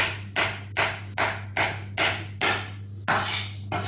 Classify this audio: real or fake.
real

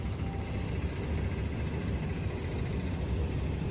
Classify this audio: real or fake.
real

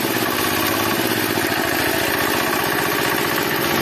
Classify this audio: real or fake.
real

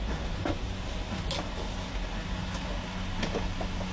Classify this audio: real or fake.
real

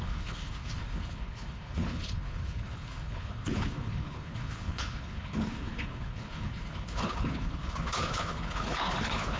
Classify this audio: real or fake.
fake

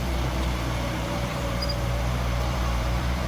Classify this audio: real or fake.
fake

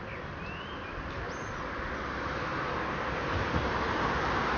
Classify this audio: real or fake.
real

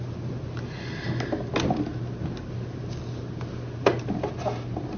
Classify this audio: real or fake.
real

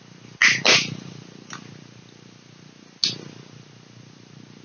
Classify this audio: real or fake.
real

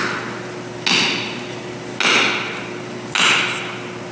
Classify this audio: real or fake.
real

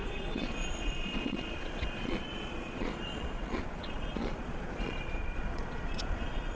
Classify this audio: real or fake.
fake